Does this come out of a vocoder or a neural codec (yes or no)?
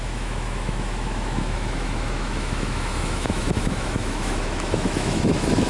yes